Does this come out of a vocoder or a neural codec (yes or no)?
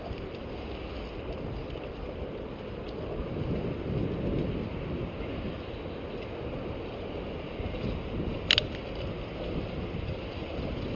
no